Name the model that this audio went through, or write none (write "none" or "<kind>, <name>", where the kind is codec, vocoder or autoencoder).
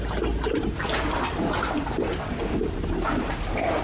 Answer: none